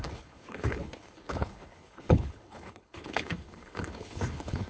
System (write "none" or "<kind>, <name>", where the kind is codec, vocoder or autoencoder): codec, HILCodec